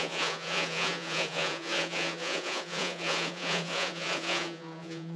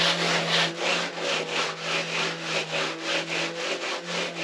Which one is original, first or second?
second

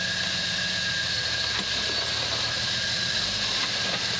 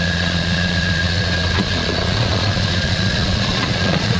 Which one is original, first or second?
first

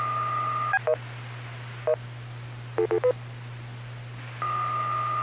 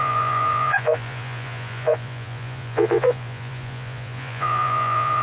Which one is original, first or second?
first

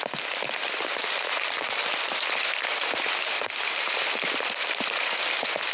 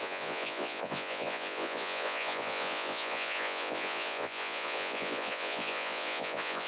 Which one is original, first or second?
first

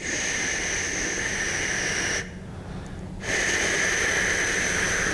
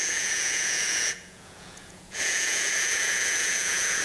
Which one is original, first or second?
first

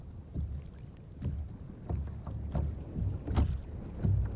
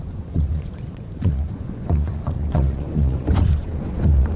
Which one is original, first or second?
first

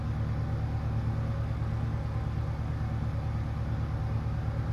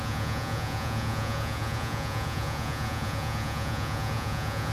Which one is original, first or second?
first